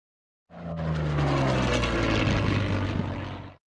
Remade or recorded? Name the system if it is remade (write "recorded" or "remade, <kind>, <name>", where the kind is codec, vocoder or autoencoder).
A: recorded